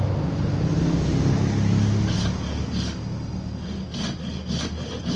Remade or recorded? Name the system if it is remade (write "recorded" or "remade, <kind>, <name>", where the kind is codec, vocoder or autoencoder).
recorded